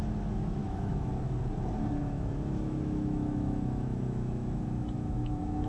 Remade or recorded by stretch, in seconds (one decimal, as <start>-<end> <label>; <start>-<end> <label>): 0.0-0.6 recorded; 0.6-1.1 remade; 1.1-2.0 recorded; 2.0-5.7 remade